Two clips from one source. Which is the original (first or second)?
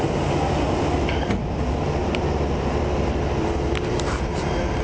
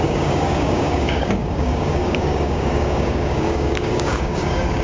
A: first